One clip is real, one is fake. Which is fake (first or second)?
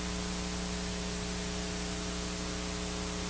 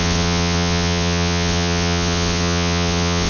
second